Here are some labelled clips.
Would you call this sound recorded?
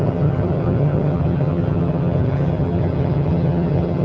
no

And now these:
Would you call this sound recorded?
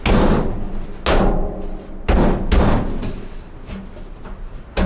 yes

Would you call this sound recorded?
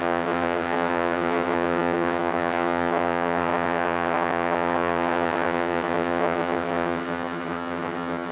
no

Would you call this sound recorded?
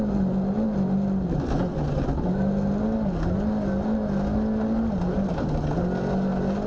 yes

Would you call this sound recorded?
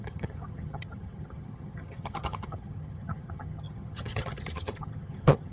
no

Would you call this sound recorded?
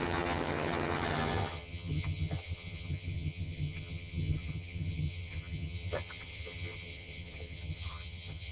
no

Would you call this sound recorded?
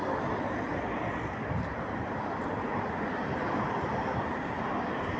yes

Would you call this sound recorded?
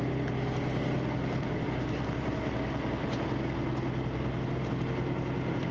yes